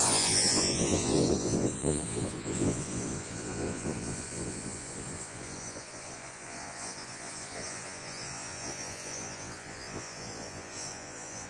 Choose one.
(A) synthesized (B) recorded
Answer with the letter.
A